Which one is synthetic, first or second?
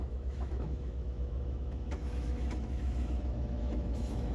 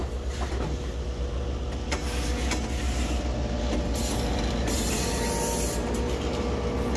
first